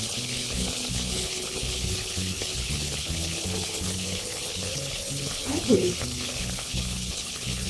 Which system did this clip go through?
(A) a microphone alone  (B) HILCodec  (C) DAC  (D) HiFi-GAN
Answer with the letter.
B